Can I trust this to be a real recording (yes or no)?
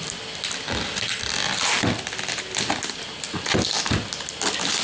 yes